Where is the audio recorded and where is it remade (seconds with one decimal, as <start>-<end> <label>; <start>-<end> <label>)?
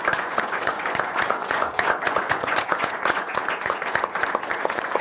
0.0-5.0 remade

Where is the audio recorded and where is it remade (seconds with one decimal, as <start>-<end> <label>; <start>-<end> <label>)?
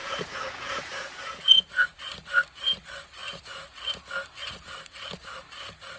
0.0-2.0 remade; 2.0-6.0 recorded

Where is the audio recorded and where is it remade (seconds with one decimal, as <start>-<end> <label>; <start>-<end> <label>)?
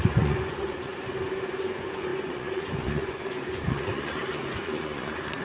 0.0-0.9 remade; 0.9-1.5 recorded; 1.5-5.4 remade